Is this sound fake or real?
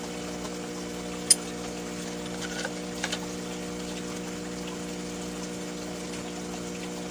real